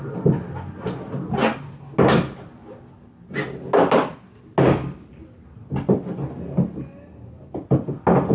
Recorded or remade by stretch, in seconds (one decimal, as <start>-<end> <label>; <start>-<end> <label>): 0.0-8.3 recorded

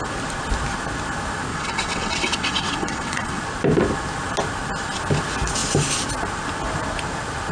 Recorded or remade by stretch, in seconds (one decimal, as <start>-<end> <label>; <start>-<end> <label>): 0.0-1.5 recorded; 1.5-3.4 remade; 3.4-7.5 recorded

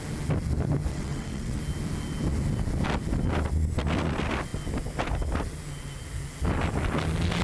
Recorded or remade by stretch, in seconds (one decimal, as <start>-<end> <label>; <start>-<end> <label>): 0.0-0.9 recorded; 0.9-1.6 remade; 1.6-7.4 recorded

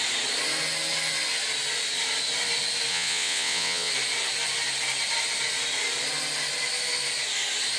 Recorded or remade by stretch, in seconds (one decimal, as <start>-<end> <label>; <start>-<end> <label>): 0.0-2.9 recorded; 2.9-3.9 remade; 3.9-7.8 recorded

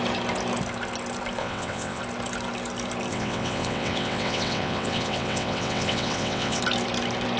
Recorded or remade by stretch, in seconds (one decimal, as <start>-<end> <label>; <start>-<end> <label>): 0.0-1.4 recorded; 1.4-2.0 remade; 2.0-3.1 recorded; 3.1-6.6 remade; 6.6-7.4 recorded

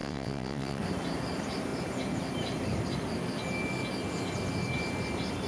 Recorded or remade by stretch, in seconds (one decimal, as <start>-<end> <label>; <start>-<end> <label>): 0.0-0.8 remade; 0.8-5.5 recorded

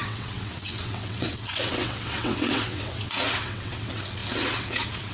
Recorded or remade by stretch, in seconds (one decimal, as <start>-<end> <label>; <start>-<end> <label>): 0.0-5.1 remade

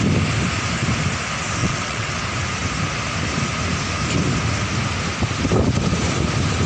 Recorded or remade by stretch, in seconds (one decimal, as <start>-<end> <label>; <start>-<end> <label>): 0.0-1.6 recorded; 1.6-2.1 remade; 2.1-6.7 recorded